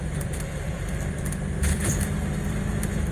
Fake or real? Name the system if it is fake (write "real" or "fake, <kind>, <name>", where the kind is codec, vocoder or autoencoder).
fake, vocoder, BigVGAN v2